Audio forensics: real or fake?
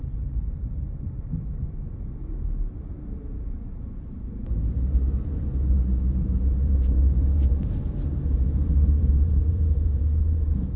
fake